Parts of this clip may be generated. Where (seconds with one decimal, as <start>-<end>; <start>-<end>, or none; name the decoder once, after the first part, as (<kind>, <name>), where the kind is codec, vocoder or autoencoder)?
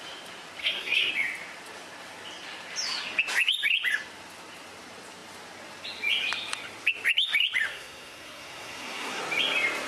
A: 0.6-1.1 (codec, SNAC); 7.7-9.2